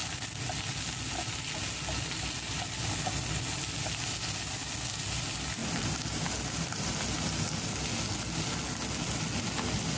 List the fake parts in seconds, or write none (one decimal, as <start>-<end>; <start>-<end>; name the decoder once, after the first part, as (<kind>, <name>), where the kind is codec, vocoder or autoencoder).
5.6-6.9 (vocoder, BigVGAN v2)